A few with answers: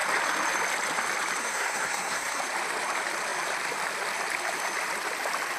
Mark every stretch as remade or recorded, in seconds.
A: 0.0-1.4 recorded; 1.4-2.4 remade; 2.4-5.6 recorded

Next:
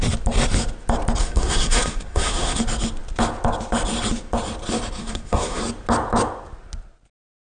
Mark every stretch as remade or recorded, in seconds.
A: 0.0-1.2 recorded; 1.2-2.6 remade; 2.6-5.0 recorded; 5.0-5.6 remade; 5.6-7.5 recorded

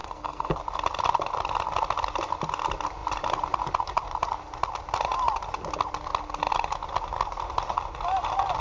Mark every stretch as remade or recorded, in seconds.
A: 0.0-0.6 remade; 0.6-8.6 recorded

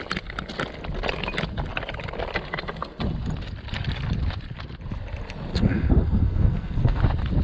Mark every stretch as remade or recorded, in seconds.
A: 0.0-5.5 recorded; 5.5-7.0 remade; 7.0-7.4 recorded

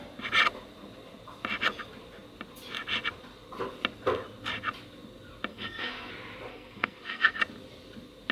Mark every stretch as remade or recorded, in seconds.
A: 0.0-5.5 recorded; 5.5-6.1 remade; 6.1-6.5 recorded; 6.5-7.4 remade; 7.4-8.3 recorded